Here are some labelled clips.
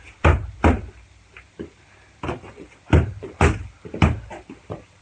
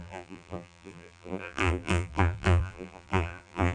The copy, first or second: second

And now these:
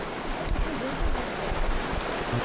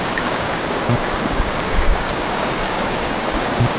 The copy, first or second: second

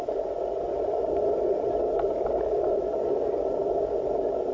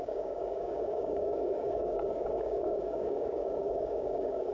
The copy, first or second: second